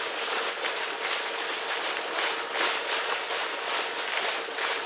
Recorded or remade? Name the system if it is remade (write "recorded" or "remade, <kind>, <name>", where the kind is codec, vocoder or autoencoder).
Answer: recorded